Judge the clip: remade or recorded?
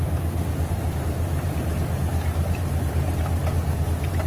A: remade